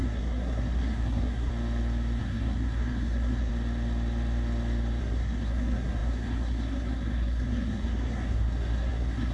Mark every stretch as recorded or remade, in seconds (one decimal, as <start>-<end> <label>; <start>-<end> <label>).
0.0-1.5 remade; 1.5-2.2 recorded; 2.2-3.5 remade; 3.5-5.0 recorded; 5.0-9.3 remade

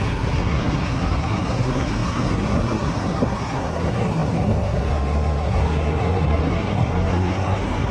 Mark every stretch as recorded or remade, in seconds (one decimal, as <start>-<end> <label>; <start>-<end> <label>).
0.0-7.9 remade

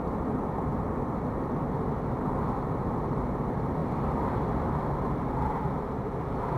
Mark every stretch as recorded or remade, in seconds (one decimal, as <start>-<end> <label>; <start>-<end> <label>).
0.0-6.6 recorded

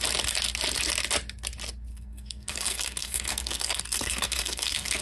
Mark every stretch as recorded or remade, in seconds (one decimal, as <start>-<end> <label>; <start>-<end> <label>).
0.0-1.9 recorded; 1.9-5.0 remade

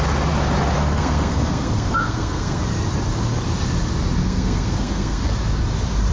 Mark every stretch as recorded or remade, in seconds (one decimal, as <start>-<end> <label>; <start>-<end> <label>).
0.0-0.8 recorded; 0.8-2.6 remade; 2.6-4.2 recorded; 4.2-5.2 remade; 5.2-6.1 recorded

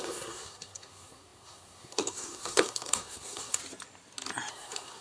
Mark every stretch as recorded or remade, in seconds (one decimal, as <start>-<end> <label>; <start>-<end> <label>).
0.0-3.6 remade; 3.6-4.5 recorded; 4.5-5.0 remade

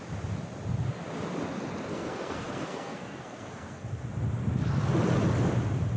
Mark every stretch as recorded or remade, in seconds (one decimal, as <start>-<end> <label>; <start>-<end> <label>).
0.0-1.9 recorded; 1.9-3.9 remade; 3.9-6.0 recorded